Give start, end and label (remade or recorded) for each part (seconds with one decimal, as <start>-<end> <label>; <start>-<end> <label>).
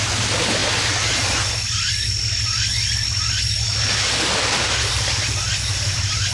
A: 0.0-6.3 recorded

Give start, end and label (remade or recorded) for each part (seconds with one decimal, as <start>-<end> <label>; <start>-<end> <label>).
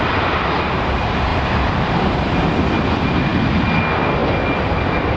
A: 0.0-5.2 recorded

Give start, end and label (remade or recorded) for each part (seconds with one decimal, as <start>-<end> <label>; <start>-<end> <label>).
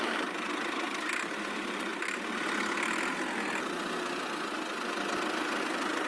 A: 0.0-1.9 remade; 1.9-5.6 recorded; 5.6-6.1 remade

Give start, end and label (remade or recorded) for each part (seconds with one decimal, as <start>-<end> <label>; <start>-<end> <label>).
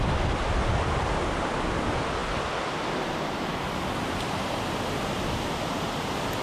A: 0.0-6.4 recorded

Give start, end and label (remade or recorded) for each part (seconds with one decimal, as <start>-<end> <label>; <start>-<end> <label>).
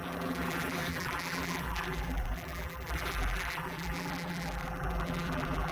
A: 0.0-5.7 remade